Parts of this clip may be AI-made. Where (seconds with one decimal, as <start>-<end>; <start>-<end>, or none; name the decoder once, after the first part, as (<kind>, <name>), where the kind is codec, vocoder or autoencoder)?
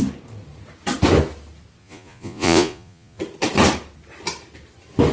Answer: 1.8-3.2 (vocoder, Vocos)